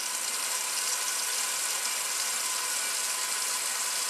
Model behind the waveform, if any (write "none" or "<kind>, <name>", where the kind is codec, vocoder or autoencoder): none